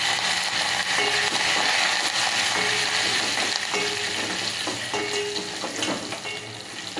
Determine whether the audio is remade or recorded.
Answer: recorded